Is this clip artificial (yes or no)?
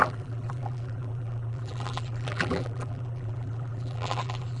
yes